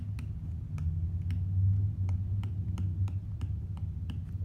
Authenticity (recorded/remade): recorded